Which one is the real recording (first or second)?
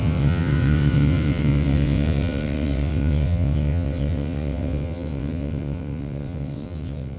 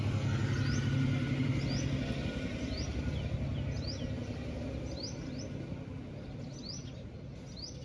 second